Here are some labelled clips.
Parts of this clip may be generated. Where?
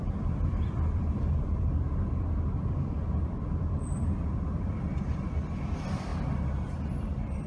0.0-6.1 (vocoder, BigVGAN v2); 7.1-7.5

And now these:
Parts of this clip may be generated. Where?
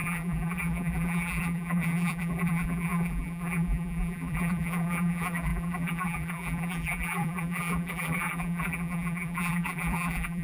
0.0-10.4 (vocoder, BigVGAN v2)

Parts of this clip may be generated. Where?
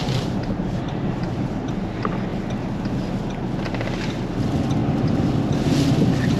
0.0-1.7 (vocoder, BigVGAN v2)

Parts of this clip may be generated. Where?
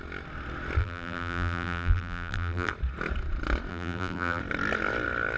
0.8-2.7 (vocoder, BigVGAN v2); 3.7-4.4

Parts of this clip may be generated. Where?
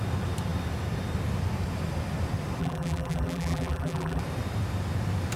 2.6-4.2 (vocoder, BigVGAN v2)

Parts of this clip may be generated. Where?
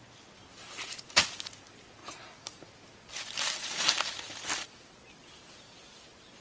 0.4-1.1 (vocoder, BigVGAN v2); 5.2-6.4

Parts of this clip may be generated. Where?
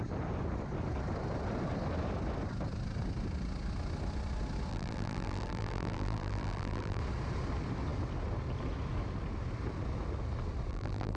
4.7-7.0 (vocoder, BigVGAN v2); 10.7-11.2